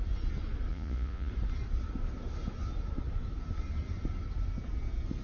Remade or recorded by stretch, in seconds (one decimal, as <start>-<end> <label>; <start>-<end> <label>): 0.0-0.7 recorded; 0.7-1.3 remade; 1.3-5.2 recorded